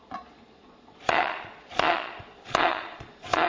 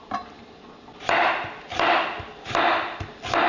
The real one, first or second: second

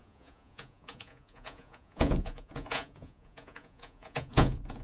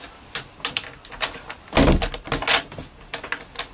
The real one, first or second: second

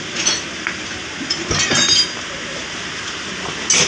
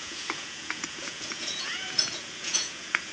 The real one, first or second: first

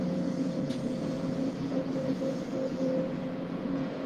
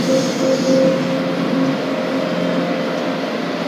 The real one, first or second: second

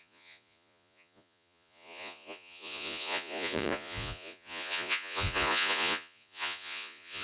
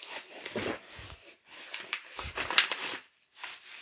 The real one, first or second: second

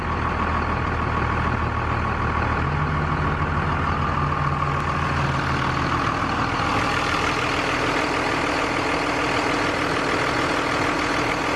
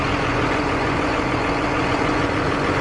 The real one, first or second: first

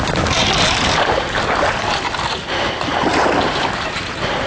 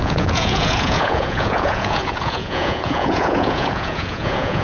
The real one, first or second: first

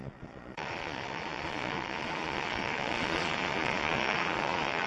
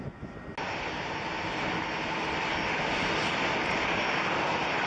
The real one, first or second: second